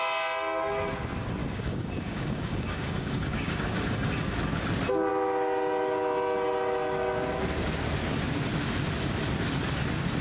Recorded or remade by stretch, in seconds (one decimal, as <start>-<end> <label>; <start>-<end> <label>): 0.0-1.4 recorded; 1.4-4.3 remade; 4.3-10.2 recorded